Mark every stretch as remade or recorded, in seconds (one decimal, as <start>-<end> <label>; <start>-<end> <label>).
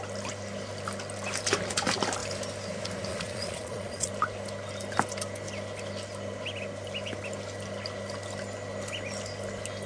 0.0-3.1 recorded; 3.1-4.1 remade; 4.1-9.9 recorded